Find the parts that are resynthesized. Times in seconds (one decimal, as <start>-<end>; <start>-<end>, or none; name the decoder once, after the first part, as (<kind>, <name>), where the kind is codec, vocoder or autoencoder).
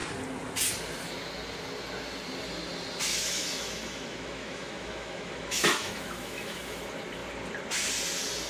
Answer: 3.1-6.8 (autoencoder, DAC-VAE)